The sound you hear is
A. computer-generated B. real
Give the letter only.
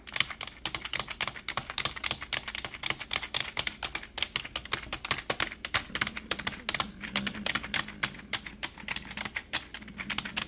B